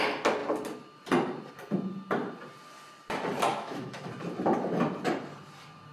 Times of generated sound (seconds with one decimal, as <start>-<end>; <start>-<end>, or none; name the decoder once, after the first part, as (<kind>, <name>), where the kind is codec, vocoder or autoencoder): 3.5-4.1 (autoencoder, DAC-VAE)

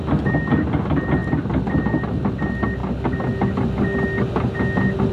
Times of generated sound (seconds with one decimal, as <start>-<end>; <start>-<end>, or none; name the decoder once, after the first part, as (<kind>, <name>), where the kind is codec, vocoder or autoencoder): none

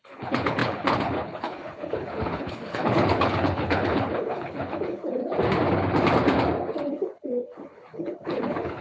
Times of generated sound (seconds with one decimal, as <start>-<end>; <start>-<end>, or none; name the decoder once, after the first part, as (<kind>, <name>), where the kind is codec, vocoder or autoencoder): 0.0-5.2 (codec, HILCodec); 6.9-8.8

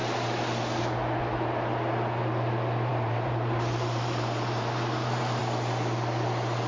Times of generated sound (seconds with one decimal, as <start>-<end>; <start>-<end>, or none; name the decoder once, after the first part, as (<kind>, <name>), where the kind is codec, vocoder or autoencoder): 2.9-5.4 (vocoder, BigVGAN v2)

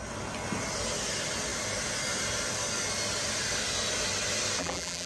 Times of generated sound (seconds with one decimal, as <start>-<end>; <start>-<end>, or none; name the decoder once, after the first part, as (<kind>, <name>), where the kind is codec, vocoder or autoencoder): 4.6-5.1 (vocoder, BigVGAN v2)

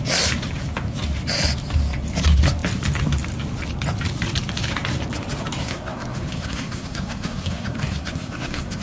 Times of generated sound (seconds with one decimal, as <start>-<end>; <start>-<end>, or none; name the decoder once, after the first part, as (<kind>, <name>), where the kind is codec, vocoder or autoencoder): 5.6-8.8 (codec, SNAC)

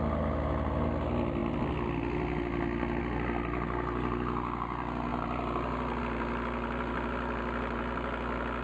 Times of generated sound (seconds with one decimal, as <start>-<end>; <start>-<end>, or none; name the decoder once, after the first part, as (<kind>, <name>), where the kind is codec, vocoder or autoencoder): none

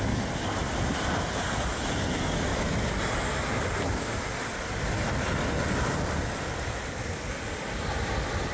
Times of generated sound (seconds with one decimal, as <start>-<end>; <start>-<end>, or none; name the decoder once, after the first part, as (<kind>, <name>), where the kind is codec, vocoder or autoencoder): none